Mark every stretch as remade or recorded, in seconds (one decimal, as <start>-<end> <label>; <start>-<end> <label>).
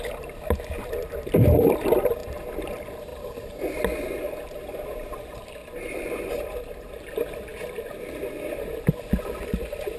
0.0-10.0 recorded